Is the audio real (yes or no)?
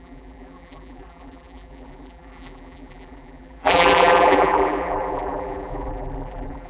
no